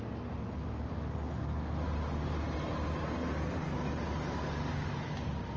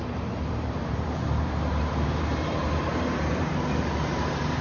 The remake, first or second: second